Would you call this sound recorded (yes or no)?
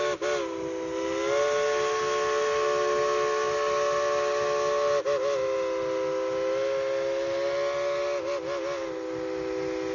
yes